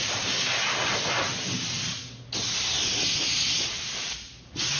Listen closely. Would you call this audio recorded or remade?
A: recorded